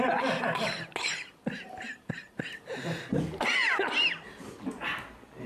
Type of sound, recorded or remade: recorded